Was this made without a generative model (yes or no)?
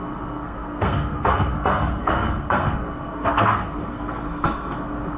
no